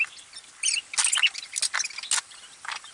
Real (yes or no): yes